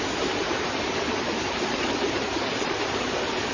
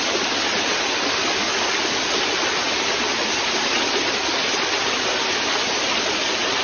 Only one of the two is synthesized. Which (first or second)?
first